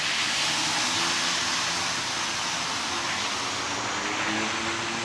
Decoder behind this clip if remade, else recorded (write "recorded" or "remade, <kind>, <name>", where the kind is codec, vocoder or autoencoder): recorded